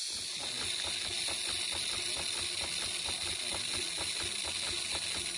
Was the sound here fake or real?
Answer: real